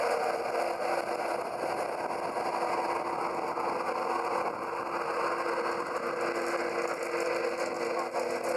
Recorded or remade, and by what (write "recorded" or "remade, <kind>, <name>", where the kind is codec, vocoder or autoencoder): recorded